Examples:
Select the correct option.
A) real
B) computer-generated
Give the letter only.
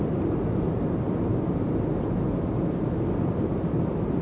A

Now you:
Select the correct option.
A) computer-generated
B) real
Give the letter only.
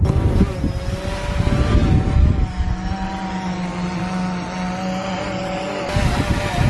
B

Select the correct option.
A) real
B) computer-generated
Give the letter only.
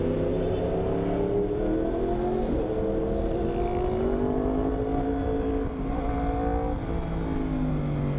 A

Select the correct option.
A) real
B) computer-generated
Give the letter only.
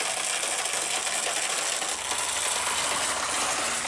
A